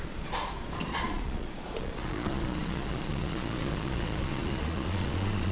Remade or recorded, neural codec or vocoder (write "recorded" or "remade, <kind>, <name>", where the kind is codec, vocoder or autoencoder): remade, vocoder, Vocos